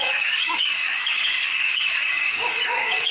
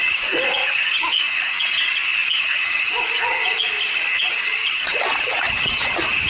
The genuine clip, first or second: second